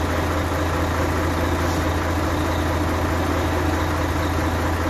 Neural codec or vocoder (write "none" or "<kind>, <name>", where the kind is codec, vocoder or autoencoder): none